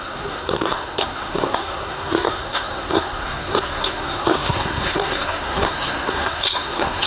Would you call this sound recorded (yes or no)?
no